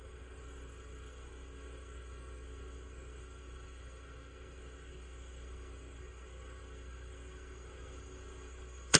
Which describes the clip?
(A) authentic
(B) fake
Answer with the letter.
B